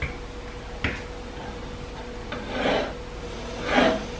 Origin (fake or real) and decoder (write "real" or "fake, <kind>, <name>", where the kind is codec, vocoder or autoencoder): real